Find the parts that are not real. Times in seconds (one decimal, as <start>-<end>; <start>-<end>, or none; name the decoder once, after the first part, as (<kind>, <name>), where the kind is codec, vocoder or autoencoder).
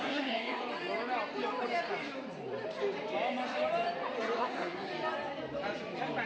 0.0-0.6 (codec, SNAC); 4.4-4.9